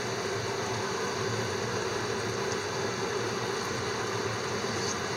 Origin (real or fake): real